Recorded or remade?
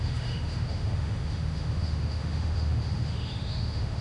remade